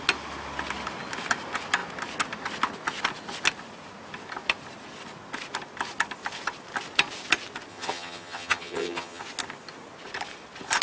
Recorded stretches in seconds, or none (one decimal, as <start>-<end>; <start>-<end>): 0.0-7.7; 9.2-10.8